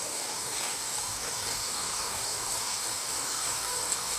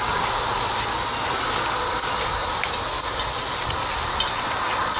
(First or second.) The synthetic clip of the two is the first